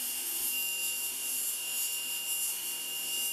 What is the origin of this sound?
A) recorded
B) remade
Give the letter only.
B